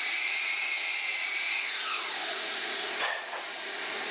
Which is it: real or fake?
fake